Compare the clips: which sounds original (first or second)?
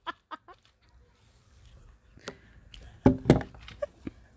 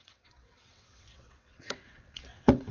first